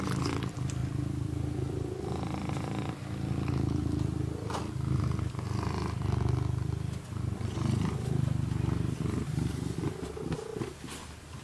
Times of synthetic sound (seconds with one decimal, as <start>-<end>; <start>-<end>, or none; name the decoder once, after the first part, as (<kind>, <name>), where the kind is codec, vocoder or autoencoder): 0.8-2.9 (vocoder, BigVGAN v2)